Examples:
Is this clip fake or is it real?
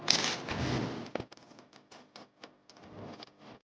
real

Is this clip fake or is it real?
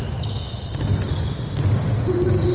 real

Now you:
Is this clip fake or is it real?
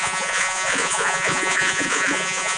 fake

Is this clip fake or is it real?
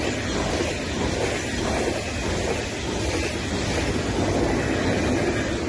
real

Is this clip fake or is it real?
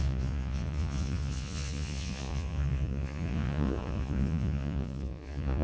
fake